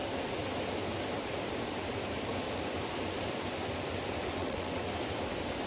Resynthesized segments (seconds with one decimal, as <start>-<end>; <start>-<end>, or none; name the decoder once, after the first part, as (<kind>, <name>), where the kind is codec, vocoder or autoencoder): 4.4-4.9 (vocoder, WaveNeXt)